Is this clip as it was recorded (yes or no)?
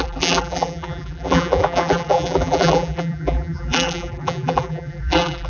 no